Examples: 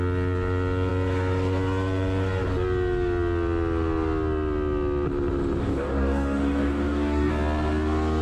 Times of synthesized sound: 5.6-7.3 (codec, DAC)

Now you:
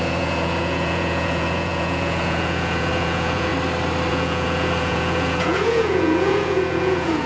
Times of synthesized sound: 0.0-3.5 (vocoder, Vocos); 4.1-7.3

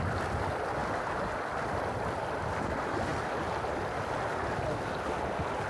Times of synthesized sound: none

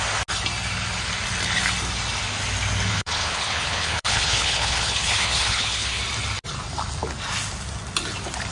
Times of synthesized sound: 2.9-6.0 (codec, HILCodec)

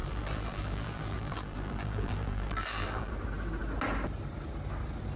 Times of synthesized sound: 0.0-3.1 (vocoder, BigVGAN v2)